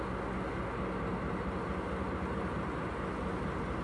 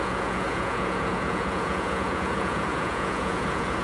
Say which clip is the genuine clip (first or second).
first